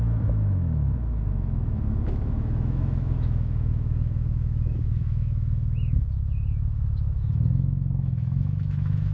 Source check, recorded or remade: remade